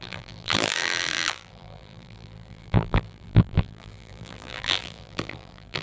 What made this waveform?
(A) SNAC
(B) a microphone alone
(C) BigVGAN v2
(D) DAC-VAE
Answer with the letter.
C